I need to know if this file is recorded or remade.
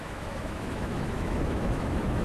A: remade